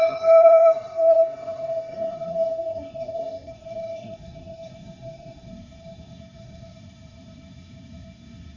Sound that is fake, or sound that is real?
fake